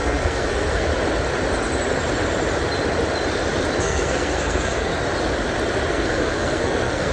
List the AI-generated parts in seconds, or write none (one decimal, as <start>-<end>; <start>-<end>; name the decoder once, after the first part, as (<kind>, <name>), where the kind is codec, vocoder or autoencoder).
0.0-0.9 (codec, SNAC); 3.8-4.9; 5.9-7.1